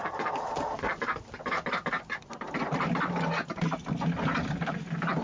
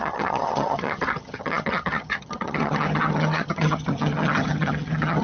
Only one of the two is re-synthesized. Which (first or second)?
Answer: second